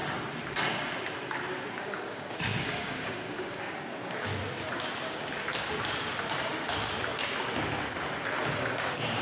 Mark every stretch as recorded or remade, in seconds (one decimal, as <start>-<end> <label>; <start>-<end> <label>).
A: 0.0-1.7 recorded; 1.7-4.3 remade; 4.3-8.5 recorded; 8.5-9.2 remade